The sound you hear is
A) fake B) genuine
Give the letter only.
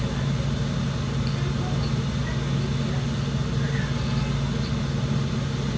B